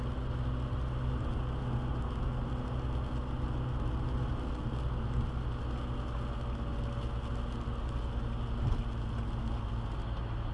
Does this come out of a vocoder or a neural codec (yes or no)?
no